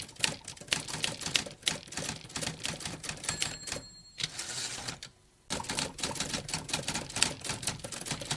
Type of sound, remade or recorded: recorded